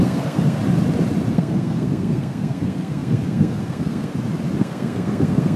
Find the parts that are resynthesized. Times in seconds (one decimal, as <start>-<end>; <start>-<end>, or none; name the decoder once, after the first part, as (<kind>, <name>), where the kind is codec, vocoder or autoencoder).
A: 0.0-0.6 (codec, SNAC); 1.3-4.1; 4.6-5.6